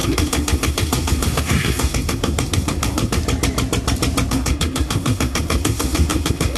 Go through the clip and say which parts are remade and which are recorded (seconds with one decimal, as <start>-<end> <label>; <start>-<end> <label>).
0.0-3.2 remade; 3.2-4.3 recorded; 4.3-6.6 remade